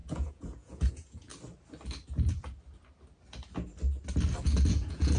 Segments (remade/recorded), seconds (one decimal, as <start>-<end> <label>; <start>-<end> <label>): 0.0-1.3 remade; 1.3-4.4 recorded; 4.4-5.2 remade